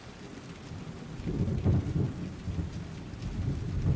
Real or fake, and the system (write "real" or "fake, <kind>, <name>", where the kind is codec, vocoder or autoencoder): real